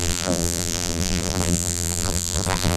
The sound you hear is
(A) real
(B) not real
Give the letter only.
B